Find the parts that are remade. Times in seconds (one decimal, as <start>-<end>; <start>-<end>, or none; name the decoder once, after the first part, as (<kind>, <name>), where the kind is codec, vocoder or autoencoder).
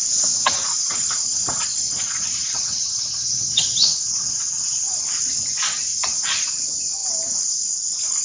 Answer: 0.7-5.0 (vocoder, Vocos); 5.9-6.5